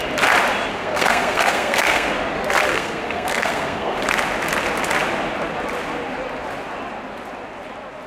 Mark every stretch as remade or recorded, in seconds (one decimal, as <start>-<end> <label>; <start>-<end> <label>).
0.0-0.7 recorded; 0.7-2.1 remade; 2.1-2.7 recorded; 2.7-4.0 remade; 4.0-8.1 recorded